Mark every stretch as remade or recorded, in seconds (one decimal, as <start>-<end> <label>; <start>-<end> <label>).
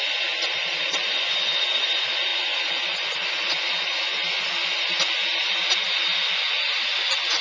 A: 0.0-1.0 recorded; 1.0-1.6 remade; 1.6-2.3 recorded; 2.3-4.5 remade; 4.5-7.4 recorded